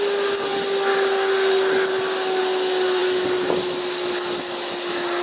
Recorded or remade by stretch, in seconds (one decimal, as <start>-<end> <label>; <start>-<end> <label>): 0.0-5.2 recorded